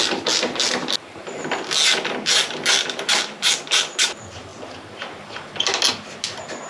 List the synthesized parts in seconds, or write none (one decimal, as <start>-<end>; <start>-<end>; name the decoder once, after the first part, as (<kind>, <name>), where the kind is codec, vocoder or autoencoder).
none